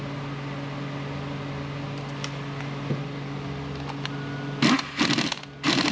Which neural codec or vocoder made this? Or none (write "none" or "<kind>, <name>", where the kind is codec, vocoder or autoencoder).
none